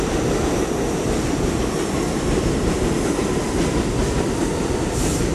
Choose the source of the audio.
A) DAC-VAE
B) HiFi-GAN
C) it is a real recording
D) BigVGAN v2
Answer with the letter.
C